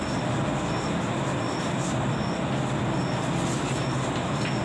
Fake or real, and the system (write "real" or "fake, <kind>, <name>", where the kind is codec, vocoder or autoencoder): real